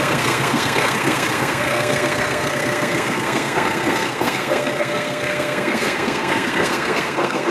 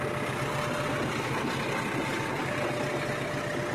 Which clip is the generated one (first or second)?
first